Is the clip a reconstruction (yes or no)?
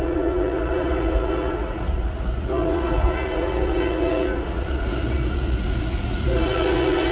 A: yes